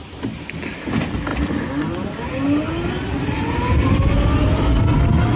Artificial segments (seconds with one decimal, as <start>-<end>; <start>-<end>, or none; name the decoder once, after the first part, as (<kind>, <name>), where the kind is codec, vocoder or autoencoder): 3.0-3.6 (vocoder, BigVGAN v2)